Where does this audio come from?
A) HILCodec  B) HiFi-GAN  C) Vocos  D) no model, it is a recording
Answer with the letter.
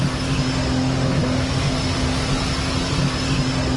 D